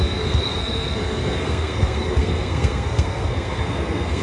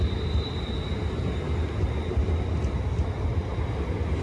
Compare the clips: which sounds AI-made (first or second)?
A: first